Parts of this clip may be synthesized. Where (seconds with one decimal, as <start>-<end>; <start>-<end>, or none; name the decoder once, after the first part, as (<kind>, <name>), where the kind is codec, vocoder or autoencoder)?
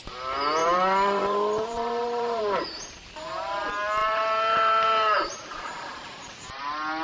0.6-2.4 (vocoder, BigVGAN v2); 4.0-6.6